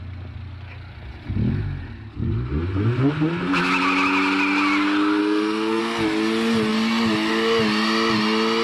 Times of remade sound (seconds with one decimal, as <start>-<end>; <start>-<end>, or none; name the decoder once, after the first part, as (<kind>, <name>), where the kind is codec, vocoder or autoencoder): 5.2-5.8 (codec, SNAC)